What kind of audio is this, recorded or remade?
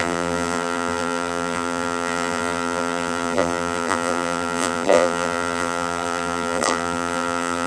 remade